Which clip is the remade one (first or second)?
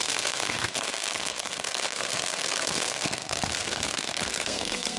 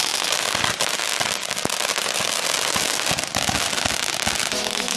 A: first